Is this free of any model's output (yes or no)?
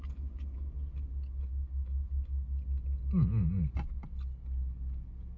yes